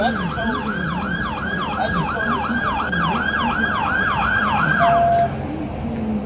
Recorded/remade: recorded